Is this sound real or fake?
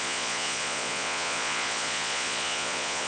fake